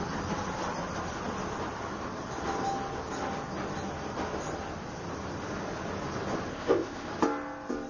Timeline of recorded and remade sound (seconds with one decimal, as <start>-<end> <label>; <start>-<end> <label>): 0.0-6.5 recorded; 6.5-7.1 remade; 7.1-7.9 recorded